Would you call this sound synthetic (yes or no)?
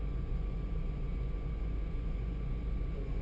yes